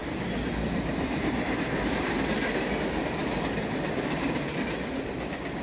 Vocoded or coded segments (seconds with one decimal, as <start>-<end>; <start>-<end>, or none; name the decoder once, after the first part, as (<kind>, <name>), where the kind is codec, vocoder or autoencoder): none